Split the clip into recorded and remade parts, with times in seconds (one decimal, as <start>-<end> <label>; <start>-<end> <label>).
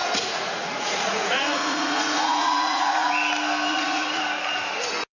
0.0-3.1 remade; 3.1-3.7 recorded; 3.7-4.2 remade; 4.2-5.2 recorded